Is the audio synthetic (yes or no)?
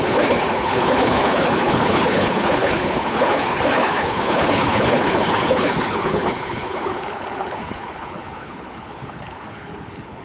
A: yes